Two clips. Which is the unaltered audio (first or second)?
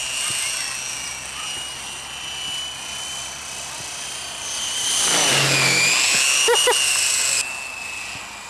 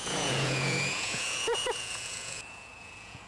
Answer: first